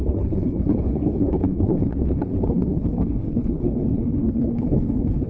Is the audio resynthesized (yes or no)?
yes